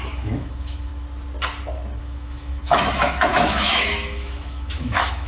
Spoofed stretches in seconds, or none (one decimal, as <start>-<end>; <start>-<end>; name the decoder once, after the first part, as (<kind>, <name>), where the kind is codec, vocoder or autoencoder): 0.0-0.9 (autoencoder, DAC-VAE); 2.0-5.3